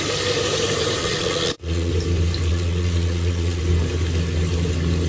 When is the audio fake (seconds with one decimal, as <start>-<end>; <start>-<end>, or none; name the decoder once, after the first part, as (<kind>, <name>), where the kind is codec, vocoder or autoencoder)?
1.0-1.9 (vocoder, Vocos); 2.5-3.6